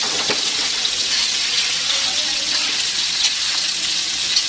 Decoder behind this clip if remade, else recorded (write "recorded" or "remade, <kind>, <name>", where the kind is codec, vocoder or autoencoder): remade, vocoder, WaveNeXt